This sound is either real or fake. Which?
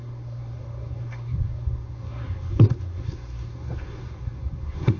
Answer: fake